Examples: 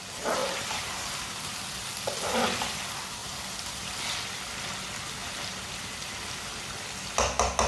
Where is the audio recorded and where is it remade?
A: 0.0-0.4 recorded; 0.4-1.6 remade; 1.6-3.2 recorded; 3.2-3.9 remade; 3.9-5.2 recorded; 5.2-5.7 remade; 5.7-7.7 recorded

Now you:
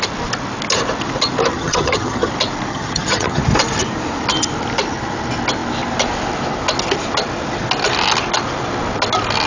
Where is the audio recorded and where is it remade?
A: 0.0-1.5 recorded; 1.5-2.3 remade; 2.3-2.7 recorded; 2.7-3.4 remade; 3.4-9.5 recorded

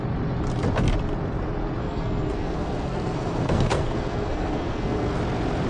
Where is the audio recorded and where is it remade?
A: 0.0-1.8 recorded; 1.8-5.2 remade; 5.2-5.7 recorded